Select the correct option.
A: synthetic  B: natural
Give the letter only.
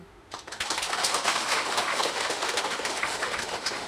A